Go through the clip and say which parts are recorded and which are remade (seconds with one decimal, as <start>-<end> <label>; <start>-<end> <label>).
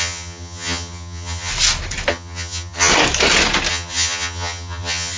0.0-1.5 remade; 1.5-2.1 recorded; 2.1-2.9 remade; 2.9-3.7 recorded; 3.7-5.2 remade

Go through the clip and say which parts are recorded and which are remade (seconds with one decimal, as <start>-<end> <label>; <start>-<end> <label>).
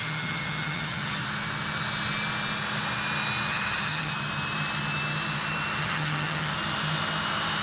0.0-1.2 remade; 1.2-3.5 recorded; 3.5-4.1 remade; 4.1-5.8 recorded; 5.8-6.5 remade; 6.5-7.6 recorded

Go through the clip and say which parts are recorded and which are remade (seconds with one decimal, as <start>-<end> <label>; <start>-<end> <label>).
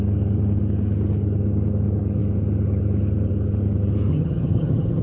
0.0-4.1 recorded; 4.1-5.0 remade